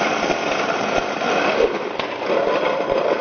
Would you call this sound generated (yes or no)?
no